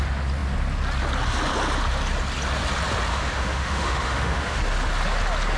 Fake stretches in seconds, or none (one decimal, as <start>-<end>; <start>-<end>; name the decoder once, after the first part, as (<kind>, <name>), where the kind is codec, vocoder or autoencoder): 3.1-4.6 (autoencoder, DAC-VAE)